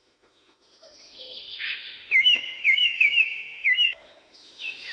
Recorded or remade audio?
remade